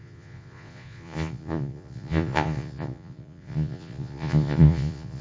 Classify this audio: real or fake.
fake